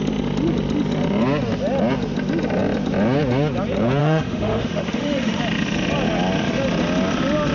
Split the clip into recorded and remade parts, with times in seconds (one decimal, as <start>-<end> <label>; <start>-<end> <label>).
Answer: 0.0-4.0 recorded; 4.0-5.4 remade; 5.4-7.5 recorded